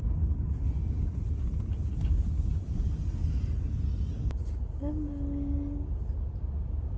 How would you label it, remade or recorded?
recorded